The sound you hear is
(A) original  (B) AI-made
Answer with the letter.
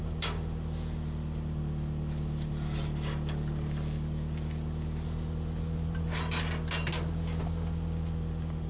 A